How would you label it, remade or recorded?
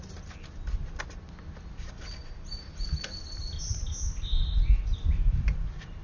recorded